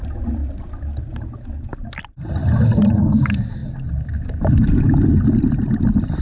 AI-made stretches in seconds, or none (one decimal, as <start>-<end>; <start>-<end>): none